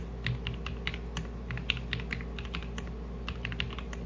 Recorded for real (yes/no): yes